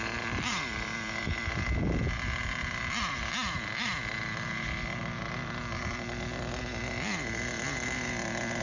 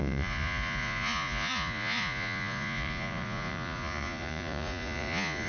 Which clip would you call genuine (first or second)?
first